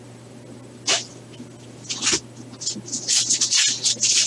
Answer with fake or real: real